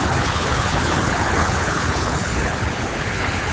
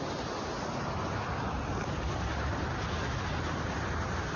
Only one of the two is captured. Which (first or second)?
second